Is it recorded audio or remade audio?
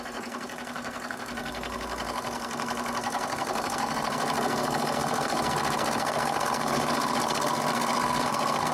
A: remade